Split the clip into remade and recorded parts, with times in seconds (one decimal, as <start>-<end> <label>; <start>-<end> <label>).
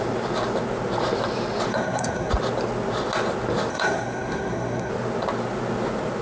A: 0.0-1.7 recorded; 1.7-2.3 remade; 2.3-3.7 recorded; 3.7-4.9 remade; 4.9-6.2 recorded